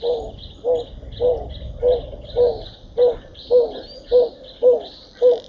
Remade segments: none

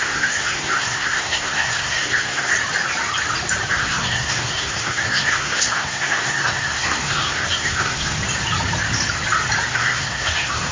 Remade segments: 0.0-2.5; 3.7-8.2; 9.7-10.7

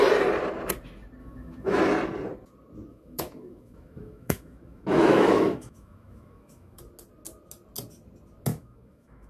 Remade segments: 1.2-1.8; 2.9-6.8; 8.5-9.3

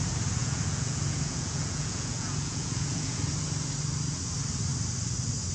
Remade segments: 0.4-3.2

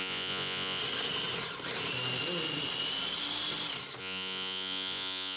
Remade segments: 0.0-0.8; 4.0-5.4